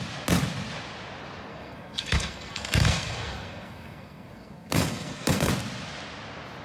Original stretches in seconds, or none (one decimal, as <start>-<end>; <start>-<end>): 0.0-1.5; 5.5-6.6